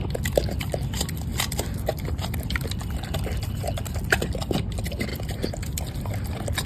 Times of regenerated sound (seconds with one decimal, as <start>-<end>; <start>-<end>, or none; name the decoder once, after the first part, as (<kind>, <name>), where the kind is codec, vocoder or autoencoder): 1.3-3.8 (vocoder, BigVGAN v2); 5.1-5.8